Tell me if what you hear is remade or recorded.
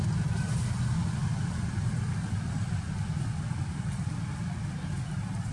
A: recorded